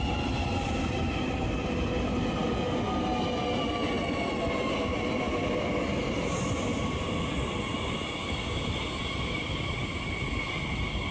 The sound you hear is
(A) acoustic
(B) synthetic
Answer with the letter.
A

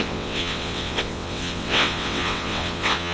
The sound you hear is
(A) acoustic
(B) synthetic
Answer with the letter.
B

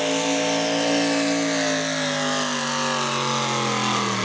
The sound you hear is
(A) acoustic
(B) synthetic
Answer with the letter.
A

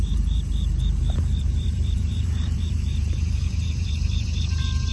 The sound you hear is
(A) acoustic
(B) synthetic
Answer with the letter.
B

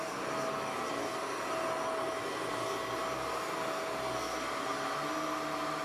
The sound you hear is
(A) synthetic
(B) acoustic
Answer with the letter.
B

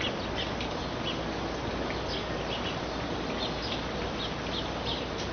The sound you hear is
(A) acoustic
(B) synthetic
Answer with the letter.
A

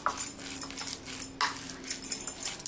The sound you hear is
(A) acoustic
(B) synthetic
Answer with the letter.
A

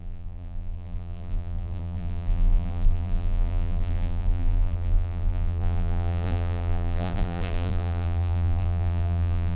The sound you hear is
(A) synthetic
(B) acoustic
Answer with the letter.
A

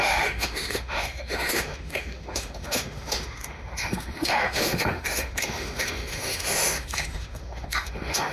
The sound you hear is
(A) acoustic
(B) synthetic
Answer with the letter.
B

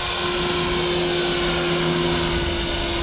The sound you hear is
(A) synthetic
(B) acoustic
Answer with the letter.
B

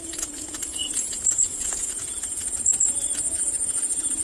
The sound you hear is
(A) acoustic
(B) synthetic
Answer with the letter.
B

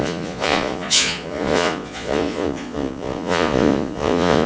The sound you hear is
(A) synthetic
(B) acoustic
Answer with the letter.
A